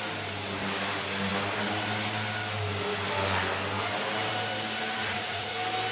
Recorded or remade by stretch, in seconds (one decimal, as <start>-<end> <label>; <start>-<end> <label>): 0.0-5.0 recorded; 5.0-5.5 remade; 5.5-5.9 recorded